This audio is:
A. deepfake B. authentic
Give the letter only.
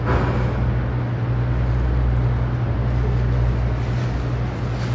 B